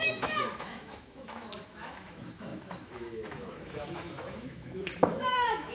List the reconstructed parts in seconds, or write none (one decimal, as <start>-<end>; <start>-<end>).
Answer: 0.0-5.7